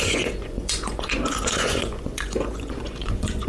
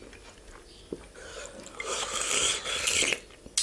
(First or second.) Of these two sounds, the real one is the second